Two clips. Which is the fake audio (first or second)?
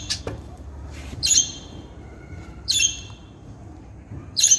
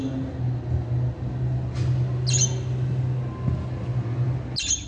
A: first